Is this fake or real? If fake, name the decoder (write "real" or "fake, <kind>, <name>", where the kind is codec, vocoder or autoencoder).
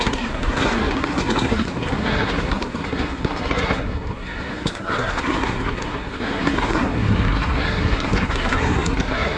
fake, codec, SNAC